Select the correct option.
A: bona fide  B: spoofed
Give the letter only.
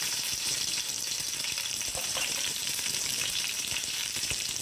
B